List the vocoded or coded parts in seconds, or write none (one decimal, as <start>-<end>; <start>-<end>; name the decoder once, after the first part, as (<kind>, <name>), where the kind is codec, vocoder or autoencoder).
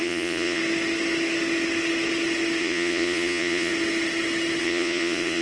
0.0-0.6 (vocoder, Vocos); 2.6-3.7; 4.6-5.4